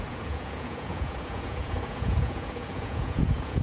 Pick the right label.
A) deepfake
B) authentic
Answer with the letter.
A